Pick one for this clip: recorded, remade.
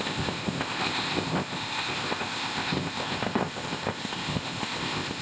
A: remade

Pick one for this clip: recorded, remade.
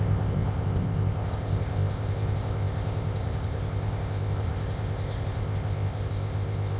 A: remade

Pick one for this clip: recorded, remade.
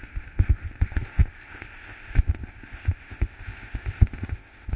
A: remade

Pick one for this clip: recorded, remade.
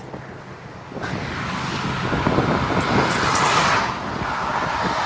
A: recorded